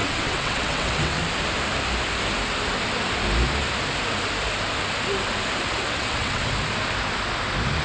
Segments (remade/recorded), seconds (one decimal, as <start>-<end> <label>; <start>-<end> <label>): 0.0-1.2 remade; 1.2-5.9 recorded; 5.9-6.4 remade; 6.4-7.8 recorded

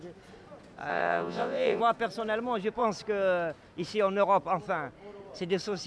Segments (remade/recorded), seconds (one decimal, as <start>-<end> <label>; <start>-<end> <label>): 0.0-0.9 recorded; 0.9-1.8 remade; 1.8-5.9 recorded